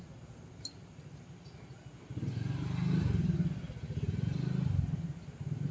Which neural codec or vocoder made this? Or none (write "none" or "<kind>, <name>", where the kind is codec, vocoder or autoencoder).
none